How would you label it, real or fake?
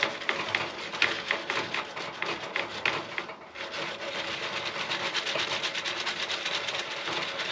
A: real